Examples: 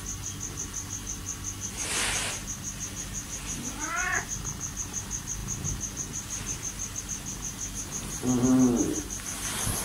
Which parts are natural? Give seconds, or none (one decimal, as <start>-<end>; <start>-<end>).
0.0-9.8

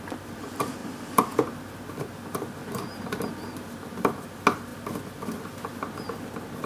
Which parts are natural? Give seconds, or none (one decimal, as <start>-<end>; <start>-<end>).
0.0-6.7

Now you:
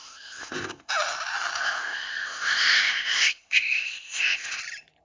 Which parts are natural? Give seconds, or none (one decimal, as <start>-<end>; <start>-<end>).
0.9-1.6; 4.6-5.0